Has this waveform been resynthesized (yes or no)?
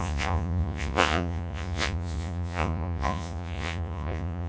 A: yes